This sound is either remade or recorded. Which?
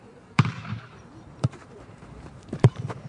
remade